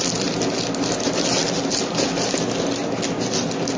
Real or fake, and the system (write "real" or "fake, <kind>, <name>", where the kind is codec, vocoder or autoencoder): real